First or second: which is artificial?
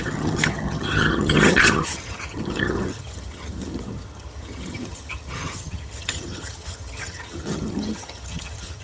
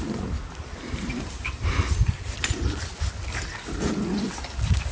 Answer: first